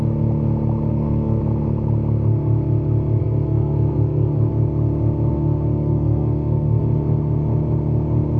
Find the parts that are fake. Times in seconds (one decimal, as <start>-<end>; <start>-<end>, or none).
0.9-1.4; 3.2-4.5; 5.3-6.8